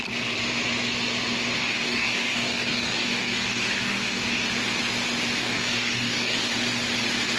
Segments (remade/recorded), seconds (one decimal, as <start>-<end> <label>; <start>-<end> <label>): 0.0-1.6 recorded; 1.6-4.5 remade; 4.5-5.4 recorded; 5.4-6.5 remade; 6.5-7.4 recorded